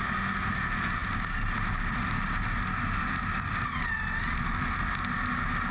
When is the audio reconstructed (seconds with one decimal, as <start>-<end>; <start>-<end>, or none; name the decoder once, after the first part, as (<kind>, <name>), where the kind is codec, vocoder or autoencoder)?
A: none